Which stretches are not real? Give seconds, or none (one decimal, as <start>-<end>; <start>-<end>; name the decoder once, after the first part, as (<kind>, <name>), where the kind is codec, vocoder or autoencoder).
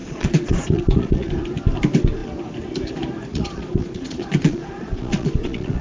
0.0-1.3 (vocoder, Vocos); 3.3-5.8